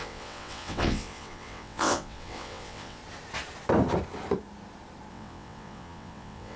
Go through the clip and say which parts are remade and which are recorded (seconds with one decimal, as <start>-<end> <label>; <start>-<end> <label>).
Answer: 0.0-3.0 remade; 3.0-5.1 recorded; 5.1-6.6 remade